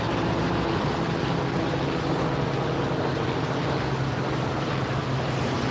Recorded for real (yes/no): yes